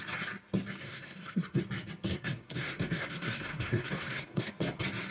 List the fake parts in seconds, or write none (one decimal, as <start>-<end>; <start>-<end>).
0.8-1.6; 2.1-4.5